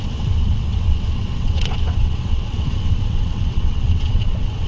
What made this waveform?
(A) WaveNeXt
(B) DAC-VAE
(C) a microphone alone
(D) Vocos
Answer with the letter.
A